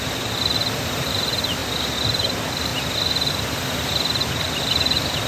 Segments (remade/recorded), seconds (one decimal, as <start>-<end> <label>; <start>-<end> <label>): 0.0-1.6 remade; 1.6-2.3 recorded; 2.3-2.7 remade; 2.7-3.9 recorded; 3.9-5.3 remade